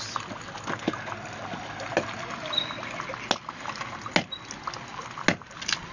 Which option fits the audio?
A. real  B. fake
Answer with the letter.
A